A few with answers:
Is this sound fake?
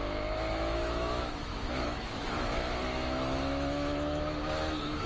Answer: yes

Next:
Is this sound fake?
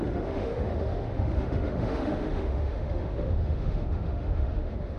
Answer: yes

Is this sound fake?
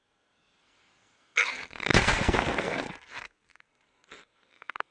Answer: yes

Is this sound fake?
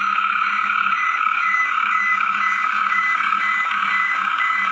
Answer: yes